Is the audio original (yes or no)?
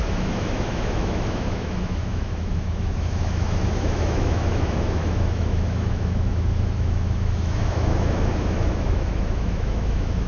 no